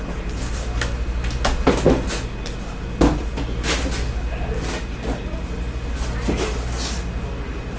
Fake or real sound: real